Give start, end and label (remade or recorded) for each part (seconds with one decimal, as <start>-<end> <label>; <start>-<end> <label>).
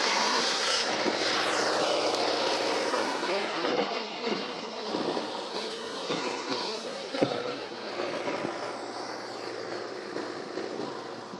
0.0-0.9 remade; 0.9-2.9 recorded; 2.9-4.9 remade; 4.9-5.5 recorded; 5.5-7.9 remade; 7.9-11.4 recorded